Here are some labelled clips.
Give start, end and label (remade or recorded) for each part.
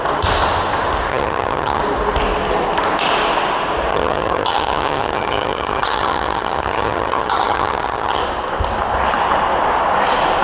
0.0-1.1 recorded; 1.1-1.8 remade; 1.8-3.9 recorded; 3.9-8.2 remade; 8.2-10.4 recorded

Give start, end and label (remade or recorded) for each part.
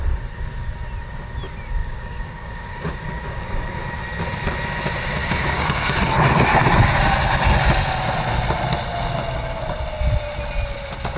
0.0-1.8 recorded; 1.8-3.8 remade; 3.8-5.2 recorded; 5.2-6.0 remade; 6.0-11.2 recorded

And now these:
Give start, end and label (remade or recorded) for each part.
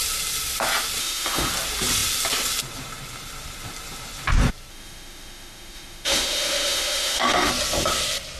0.0-1.0 recorded; 1.0-1.5 remade; 1.5-4.7 recorded; 4.7-7.5 remade; 7.5-8.4 recorded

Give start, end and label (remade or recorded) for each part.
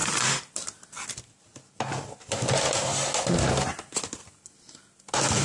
0.0-5.4 recorded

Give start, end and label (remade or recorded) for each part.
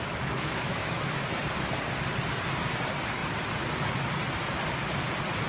0.0-1.4 remade; 1.4-5.5 recorded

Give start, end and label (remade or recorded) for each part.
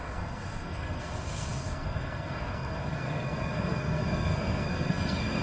0.0-5.4 remade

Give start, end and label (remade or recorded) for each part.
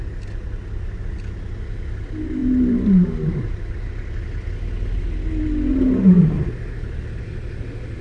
0.0-8.0 recorded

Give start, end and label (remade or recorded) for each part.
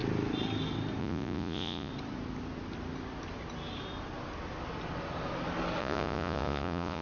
0.0-1.0 recorded; 1.0-1.9 remade; 1.9-5.8 recorded; 5.8-7.0 remade